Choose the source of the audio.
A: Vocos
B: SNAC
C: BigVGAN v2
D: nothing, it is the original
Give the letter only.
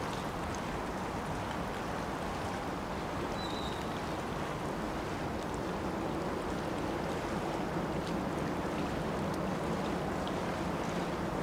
D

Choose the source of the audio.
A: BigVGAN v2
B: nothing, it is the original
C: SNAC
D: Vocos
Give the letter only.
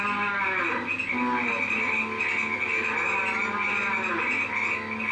B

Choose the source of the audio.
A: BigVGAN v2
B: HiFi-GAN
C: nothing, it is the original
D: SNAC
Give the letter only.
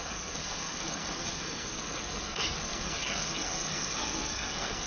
D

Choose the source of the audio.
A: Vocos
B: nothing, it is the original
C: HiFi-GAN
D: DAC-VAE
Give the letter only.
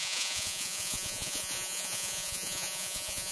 A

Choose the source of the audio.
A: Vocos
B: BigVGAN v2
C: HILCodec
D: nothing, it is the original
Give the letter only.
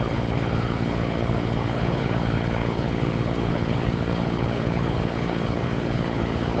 C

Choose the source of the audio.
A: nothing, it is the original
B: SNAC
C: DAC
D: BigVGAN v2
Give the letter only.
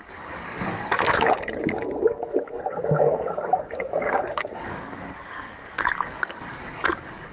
C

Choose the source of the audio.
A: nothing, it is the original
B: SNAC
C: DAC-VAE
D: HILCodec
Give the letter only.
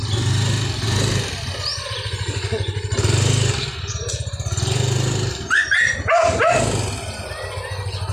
A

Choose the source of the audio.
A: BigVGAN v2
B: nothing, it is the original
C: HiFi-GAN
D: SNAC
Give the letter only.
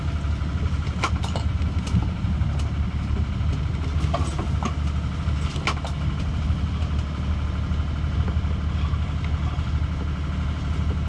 B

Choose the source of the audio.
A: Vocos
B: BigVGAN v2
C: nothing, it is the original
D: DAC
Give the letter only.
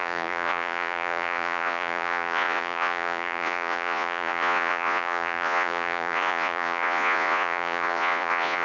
A